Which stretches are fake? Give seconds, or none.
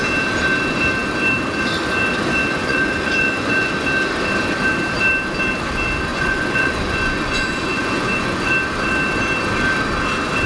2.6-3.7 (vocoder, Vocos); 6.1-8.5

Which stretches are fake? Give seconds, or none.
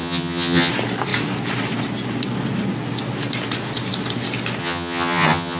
0.0-0.7 (vocoder, HiFi-GAN); 4.6-5.6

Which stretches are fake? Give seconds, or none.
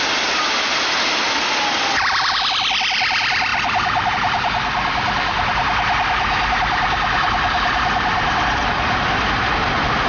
none